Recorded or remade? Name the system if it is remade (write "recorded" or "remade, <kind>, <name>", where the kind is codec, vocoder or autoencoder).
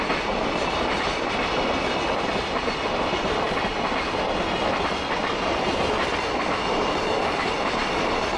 recorded